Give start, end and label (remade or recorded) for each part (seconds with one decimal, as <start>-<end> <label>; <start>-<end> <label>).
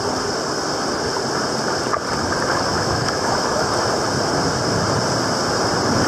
0.0-2.7 recorded; 2.7-3.7 remade; 3.7-6.1 recorded